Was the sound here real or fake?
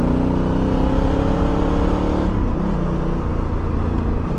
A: real